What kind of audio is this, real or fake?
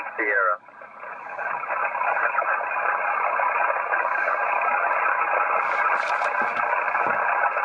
real